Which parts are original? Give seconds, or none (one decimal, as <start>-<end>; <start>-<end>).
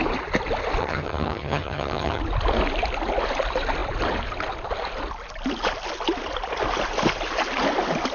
0.0-0.8; 2.2-8.1